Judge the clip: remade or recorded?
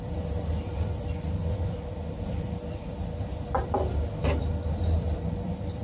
remade